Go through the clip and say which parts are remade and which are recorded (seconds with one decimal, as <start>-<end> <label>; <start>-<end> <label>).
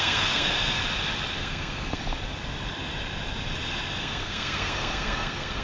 0.0-0.8 remade; 0.8-1.4 recorded; 1.4-2.0 remade; 2.0-4.0 recorded; 4.0-5.6 remade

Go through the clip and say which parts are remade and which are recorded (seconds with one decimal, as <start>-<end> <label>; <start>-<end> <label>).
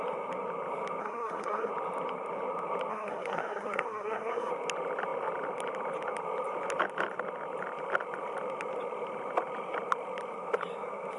0.0-1.0 recorded; 1.0-1.7 remade; 1.7-2.9 recorded; 2.9-4.5 remade; 4.5-11.2 recorded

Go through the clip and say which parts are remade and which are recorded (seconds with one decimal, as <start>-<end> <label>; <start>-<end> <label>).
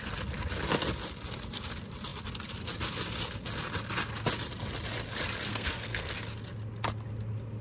0.0-5.5 recorded; 5.5-6.1 remade; 6.1-7.6 recorded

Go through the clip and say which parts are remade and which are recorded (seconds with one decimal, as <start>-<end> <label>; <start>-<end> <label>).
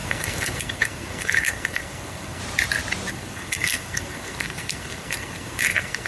0.0-2.4 remade; 2.4-3.1 recorded; 3.1-6.1 remade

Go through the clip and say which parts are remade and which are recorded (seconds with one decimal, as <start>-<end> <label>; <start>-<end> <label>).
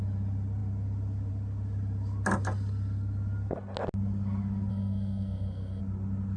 0.0-4.7 recorded; 4.7-5.8 remade; 5.8-6.4 recorded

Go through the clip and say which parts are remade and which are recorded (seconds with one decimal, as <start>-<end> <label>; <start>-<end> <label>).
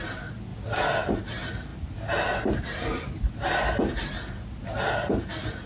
0.0-5.7 recorded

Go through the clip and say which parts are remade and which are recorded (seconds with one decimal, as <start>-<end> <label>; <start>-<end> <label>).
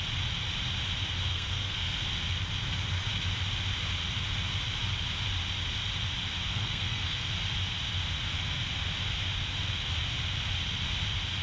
0.0-1.3 recorded; 1.3-2.0 remade; 2.0-6.5 recorded; 6.5-7.3 remade; 7.3-11.4 recorded